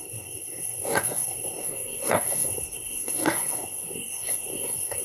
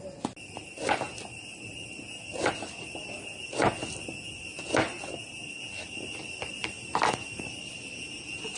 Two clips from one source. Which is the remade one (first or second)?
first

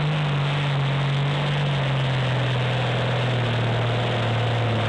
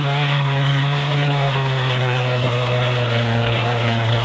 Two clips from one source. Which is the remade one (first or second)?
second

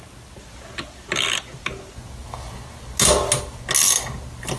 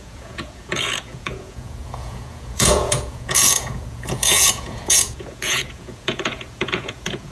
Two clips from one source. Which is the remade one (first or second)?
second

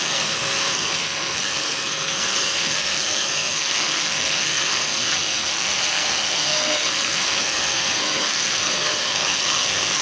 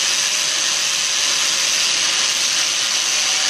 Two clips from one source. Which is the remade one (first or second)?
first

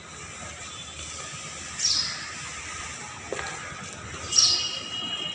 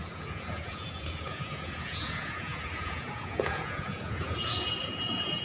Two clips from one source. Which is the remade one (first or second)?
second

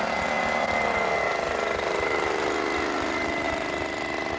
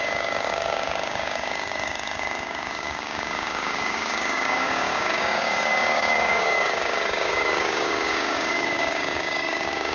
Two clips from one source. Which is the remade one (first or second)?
second